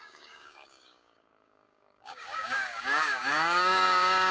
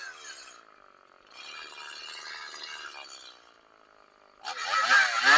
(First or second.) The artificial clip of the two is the first